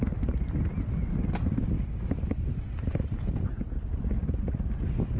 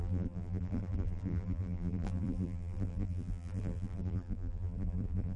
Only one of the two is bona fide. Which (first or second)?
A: first